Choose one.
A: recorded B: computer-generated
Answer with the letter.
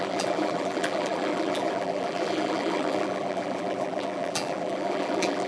B